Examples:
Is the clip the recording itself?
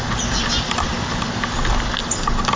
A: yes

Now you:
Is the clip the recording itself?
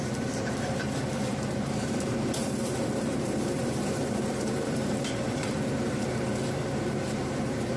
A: no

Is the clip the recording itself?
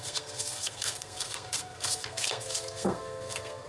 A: no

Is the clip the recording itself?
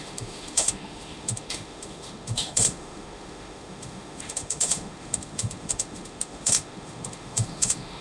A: no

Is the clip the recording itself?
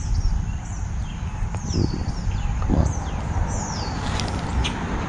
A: yes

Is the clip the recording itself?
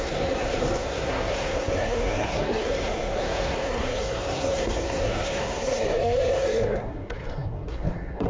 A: no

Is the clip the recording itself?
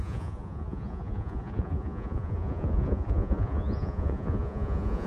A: no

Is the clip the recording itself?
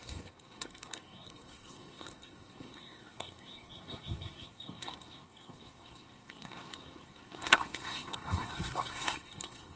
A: no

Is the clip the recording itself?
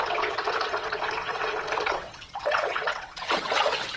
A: no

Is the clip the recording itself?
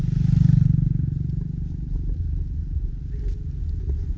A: yes